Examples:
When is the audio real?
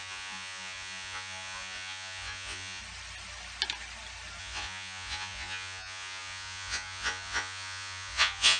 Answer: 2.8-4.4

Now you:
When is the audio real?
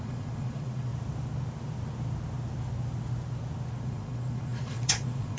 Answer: 0.9-3.8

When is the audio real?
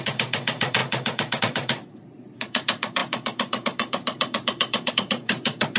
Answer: none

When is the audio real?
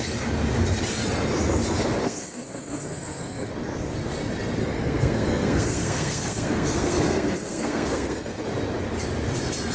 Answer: 0.0-2.0; 3.5-4.6; 8.4-9.7